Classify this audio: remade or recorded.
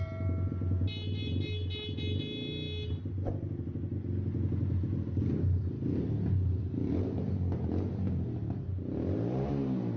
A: recorded